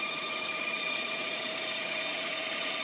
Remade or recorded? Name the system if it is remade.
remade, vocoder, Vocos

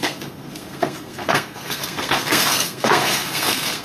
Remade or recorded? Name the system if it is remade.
remade, codec, SNAC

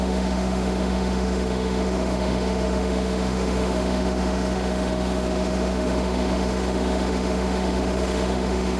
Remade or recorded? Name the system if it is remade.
remade, autoencoder, DAC-VAE